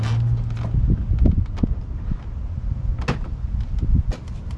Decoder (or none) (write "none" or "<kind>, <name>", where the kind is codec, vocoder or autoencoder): none